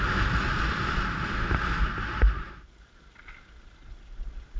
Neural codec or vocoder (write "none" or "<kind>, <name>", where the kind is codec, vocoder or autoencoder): none